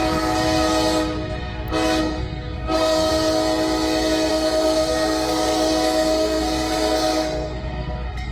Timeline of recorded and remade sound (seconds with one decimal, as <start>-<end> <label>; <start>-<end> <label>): 0.0-2.0 recorded; 2.0-3.1 remade; 3.1-4.3 recorded; 4.3-8.3 remade